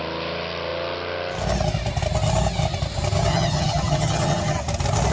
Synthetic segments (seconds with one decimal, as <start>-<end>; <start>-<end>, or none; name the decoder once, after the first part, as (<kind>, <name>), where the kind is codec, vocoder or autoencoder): 3.3-4.6 (vocoder, HiFi-GAN)